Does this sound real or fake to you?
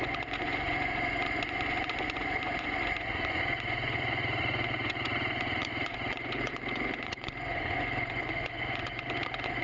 fake